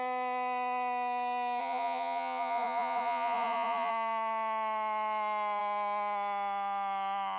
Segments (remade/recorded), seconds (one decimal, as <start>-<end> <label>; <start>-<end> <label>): 0.0-1.6 recorded; 1.6-3.9 remade; 3.9-7.4 recorded